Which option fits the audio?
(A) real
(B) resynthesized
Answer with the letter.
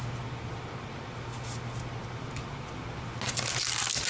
A